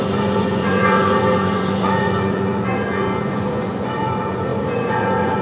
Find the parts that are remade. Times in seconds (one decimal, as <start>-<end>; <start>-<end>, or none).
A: 0.0-5.4